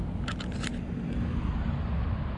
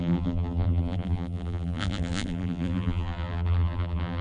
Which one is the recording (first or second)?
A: first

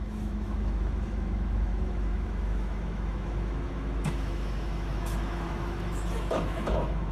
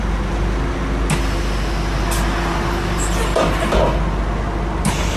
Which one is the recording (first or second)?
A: second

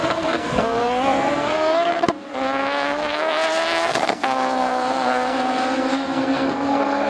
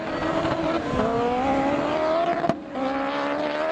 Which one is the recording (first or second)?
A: second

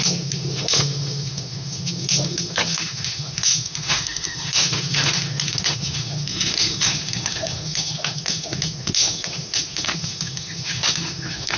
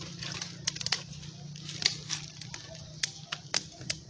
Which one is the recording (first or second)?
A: second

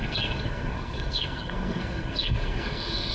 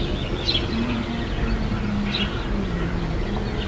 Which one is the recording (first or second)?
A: second